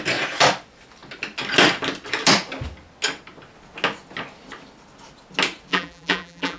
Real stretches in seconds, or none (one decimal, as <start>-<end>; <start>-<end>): 0.0-5.7